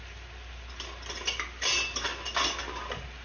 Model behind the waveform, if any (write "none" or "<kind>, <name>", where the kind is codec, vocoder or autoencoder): none